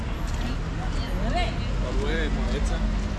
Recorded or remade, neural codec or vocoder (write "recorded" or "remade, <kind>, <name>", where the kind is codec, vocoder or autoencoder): recorded